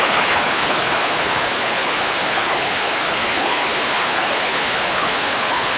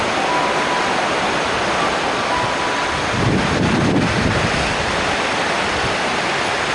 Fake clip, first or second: first